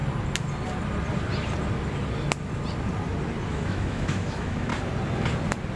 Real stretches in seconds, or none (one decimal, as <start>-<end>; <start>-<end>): 0.0-3.5; 4.7-5.8